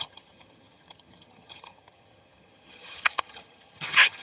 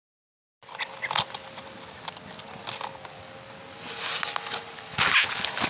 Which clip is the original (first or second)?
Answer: second